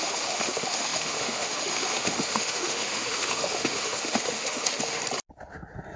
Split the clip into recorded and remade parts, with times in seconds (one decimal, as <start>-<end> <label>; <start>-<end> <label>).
0.0-5.0 remade; 5.0-6.0 recorded